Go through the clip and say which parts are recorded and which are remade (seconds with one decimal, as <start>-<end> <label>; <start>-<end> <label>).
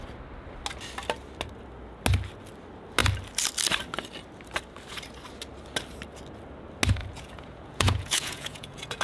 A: 0.0-7.0 recorded; 7.0-9.0 remade